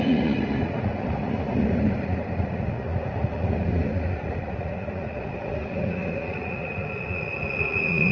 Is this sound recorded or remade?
remade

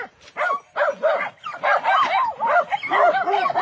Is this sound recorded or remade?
recorded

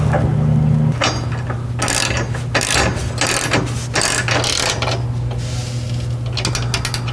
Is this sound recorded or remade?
recorded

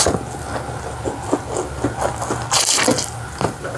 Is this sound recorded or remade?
recorded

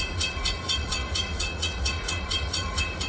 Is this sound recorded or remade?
remade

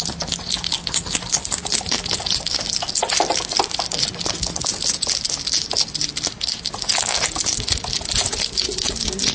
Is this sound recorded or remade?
recorded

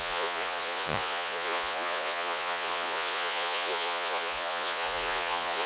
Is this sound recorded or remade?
remade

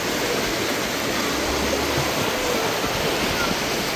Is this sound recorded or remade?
recorded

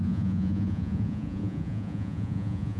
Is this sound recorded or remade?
remade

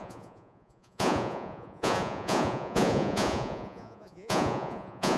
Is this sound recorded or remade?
remade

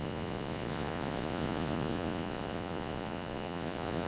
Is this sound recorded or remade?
remade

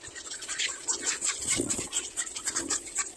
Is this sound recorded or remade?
remade